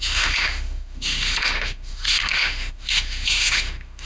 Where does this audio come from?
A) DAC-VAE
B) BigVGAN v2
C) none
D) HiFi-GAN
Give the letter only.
A